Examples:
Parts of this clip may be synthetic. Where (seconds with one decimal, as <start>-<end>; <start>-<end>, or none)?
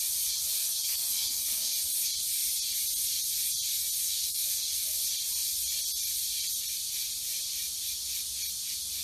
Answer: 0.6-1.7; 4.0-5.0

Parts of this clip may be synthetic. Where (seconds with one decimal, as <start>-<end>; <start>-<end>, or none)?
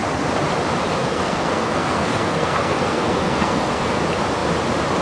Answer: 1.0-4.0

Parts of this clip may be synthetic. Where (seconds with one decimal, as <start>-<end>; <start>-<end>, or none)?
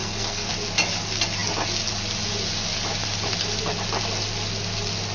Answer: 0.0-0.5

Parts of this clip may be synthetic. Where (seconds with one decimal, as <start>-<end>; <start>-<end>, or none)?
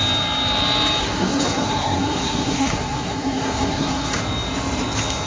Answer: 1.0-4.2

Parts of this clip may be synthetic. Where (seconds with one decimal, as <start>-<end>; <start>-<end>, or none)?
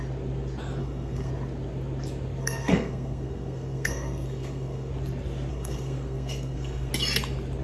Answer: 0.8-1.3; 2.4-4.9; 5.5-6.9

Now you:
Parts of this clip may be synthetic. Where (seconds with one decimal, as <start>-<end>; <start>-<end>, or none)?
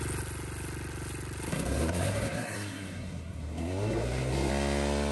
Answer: 1.5-4.5